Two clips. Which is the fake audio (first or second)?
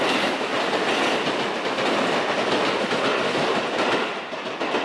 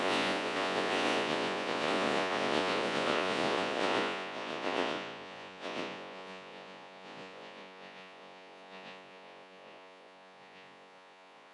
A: second